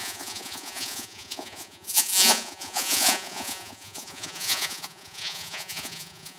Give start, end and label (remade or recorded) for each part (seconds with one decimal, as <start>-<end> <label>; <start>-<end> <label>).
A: 0.0-6.4 remade

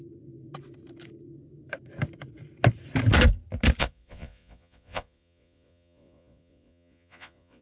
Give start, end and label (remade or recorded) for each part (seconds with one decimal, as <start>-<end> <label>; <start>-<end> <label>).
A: 0.0-3.8 recorded; 3.8-7.6 remade